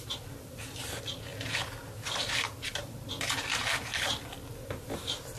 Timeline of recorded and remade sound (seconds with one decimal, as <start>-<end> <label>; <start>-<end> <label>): 0.0-5.4 recorded